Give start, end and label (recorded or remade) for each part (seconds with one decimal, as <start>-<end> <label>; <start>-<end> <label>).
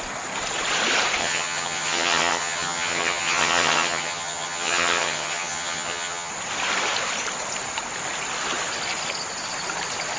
0.0-1.2 recorded; 1.2-6.3 remade; 6.3-10.2 recorded